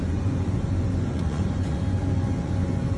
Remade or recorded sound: remade